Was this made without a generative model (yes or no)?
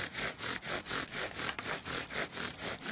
yes